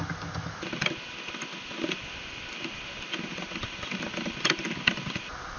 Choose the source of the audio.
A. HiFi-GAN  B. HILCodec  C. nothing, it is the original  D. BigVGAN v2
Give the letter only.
C